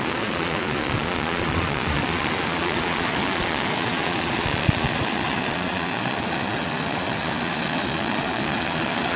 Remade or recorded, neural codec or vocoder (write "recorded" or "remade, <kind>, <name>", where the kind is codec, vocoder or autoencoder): remade, vocoder, Vocos